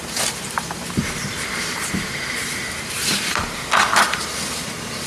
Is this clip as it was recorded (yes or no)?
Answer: no